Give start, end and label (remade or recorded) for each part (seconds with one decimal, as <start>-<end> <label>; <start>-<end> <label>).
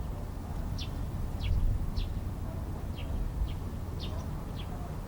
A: 0.0-5.1 recorded